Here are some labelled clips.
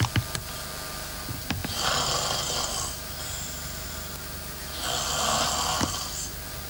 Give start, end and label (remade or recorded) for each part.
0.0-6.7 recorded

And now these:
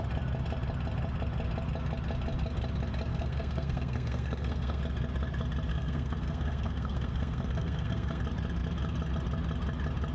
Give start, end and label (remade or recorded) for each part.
0.0-3.1 recorded; 3.1-4.8 remade; 4.8-5.7 recorded; 5.7-8.2 remade; 8.2-10.1 recorded

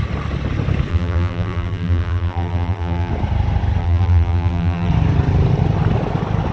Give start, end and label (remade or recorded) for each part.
0.0-0.9 recorded; 0.9-3.1 remade; 3.1-3.8 recorded; 3.8-4.9 remade; 4.9-6.5 recorded

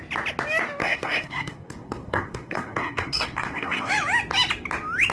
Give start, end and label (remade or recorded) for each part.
0.0-0.8 recorded; 0.8-3.9 remade; 3.9-5.1 recorded

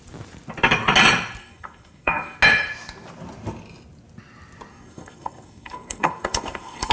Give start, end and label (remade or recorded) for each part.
0.0-1.4 recorded; 1.4-2.4 remade; 2.4-4.7 recorded; 4.7-6.9 remade